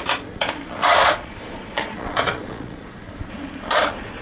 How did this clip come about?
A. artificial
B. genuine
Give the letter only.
A